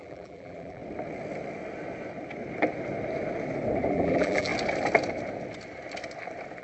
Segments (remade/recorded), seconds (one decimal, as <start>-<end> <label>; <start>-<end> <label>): 0.0-0.8 remade; 0.8-3.9 recorded; 3.9-4.5 remade; 4.5-6.6 recorded